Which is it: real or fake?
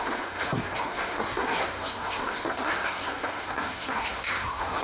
fake